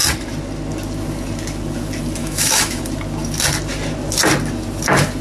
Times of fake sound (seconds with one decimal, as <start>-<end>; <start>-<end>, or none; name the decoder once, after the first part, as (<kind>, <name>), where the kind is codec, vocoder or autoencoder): 2.2-2.8 (autoencoder, DAC-VAE)